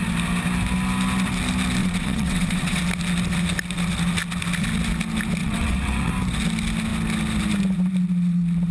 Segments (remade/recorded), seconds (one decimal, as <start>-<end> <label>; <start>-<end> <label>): 0.0-1.8 recorded; 1.8-2.8 remade; 2.8-5.4 recorded; 5.4-6.1 remade; 6.1-8.7 recorded